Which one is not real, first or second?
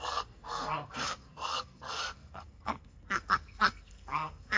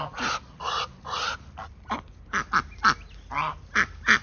first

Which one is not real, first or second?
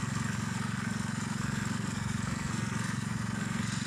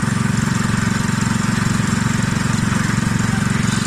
first